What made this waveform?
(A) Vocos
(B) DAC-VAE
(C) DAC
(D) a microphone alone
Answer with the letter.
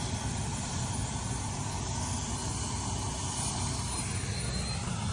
D